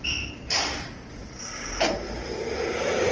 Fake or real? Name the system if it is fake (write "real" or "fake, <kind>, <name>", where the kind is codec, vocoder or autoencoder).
real